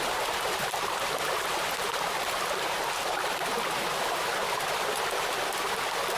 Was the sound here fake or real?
real